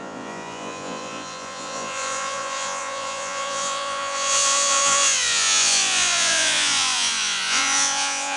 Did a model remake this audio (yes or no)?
yes